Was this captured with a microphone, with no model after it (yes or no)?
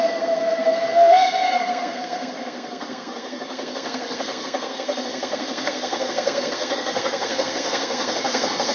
no